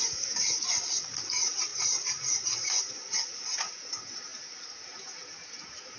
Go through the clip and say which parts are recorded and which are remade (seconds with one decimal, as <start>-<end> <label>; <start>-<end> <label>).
0.0-6.0 remade